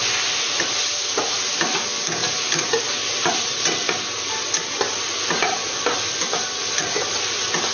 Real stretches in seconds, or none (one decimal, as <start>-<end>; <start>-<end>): 0.0-7.7